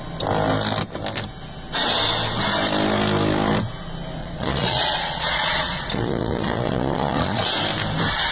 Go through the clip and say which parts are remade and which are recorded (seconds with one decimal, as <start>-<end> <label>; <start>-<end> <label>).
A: 0.0-4.2 recorded; 4.2-7.5 remade; 7.5-8.3 recorded